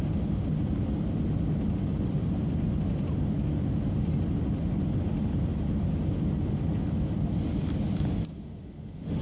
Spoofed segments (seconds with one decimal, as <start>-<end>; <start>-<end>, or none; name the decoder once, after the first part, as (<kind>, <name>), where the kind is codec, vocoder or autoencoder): 8.3-9.2 (autoencoder, DAC-VAE)